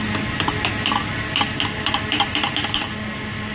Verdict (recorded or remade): recorded